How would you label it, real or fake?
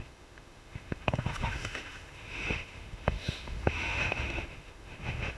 fake